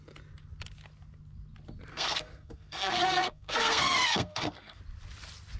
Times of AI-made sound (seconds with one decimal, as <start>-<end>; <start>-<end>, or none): 1.9-4.8